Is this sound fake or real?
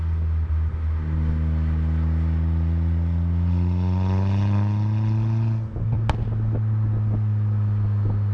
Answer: real